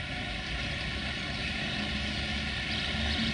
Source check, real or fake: real